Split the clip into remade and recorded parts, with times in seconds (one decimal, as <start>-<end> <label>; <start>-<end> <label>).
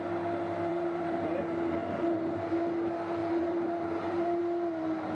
0.0-0.7 recorded; 0.7-1.4 remade; 1.4-1.8 recorded; 1.8-2.6 remade; 2.6-3.2 recorded; 3.2-4.4 remade; 4.4-5.1 recorded